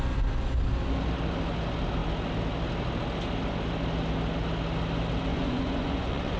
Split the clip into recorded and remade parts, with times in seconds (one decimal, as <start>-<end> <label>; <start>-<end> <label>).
0.0-5.3 recorded; 5.3-6.4 remade